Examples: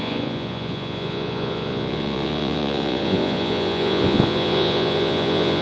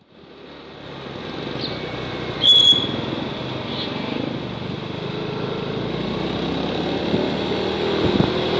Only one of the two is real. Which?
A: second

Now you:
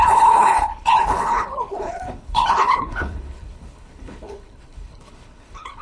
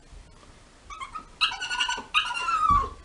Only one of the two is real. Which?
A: second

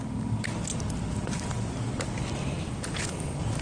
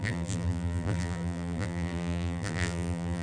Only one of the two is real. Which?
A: first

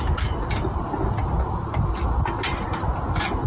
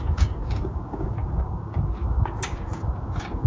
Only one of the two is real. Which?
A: first